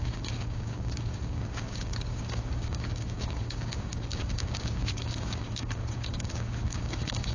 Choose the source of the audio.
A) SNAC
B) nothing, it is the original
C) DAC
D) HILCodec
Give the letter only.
C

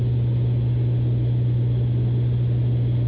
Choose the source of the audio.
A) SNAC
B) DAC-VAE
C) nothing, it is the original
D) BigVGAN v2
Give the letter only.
C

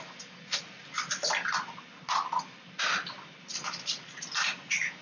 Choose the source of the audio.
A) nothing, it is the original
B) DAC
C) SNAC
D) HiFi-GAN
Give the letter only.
A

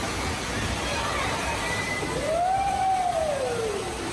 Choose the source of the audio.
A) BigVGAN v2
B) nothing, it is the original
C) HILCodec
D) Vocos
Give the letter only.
B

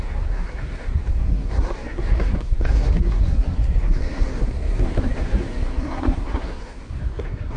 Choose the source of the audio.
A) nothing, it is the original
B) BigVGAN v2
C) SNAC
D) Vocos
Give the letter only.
C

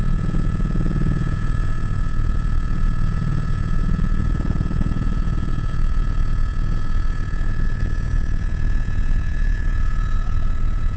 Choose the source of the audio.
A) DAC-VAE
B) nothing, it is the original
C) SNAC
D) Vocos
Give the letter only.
D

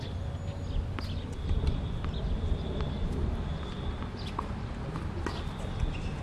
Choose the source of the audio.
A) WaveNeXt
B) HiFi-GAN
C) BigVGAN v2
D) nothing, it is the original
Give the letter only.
D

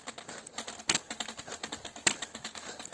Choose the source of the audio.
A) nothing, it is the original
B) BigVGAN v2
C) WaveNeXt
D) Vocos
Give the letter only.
A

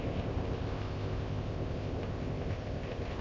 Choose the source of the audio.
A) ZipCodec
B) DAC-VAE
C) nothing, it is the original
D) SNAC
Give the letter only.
A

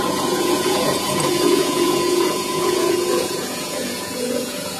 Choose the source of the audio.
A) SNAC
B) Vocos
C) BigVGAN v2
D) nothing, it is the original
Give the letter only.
B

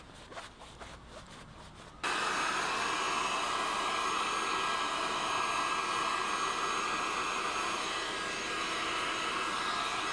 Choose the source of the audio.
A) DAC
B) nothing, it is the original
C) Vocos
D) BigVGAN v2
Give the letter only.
B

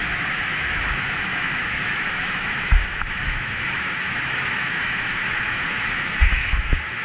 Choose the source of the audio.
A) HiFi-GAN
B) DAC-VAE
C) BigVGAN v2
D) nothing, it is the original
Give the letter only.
B